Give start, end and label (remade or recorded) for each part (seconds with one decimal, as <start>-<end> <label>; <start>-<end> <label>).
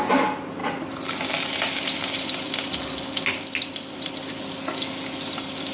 0.0-0.6 recorded; 0.6-2.1 remade; 2.1-5.7 recorded